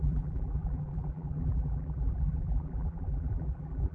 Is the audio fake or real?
fake